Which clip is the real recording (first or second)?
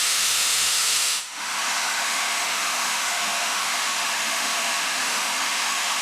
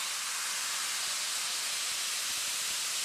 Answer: second